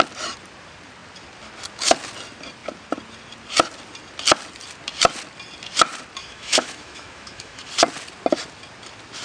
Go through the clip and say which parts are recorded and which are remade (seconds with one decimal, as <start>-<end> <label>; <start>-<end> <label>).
0.0-6.2 recorded; 6.2-7.7 remade; 7.7-9.2 recorded